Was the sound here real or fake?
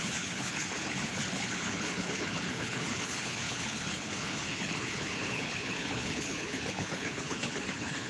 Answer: fake